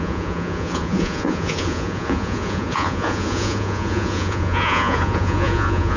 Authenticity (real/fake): fake